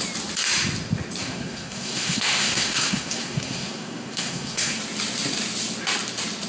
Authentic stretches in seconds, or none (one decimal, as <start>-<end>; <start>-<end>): 0.0-1.2; 4.8-6.5